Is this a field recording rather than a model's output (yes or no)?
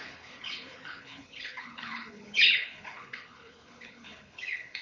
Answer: no